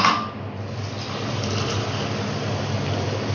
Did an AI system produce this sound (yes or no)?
no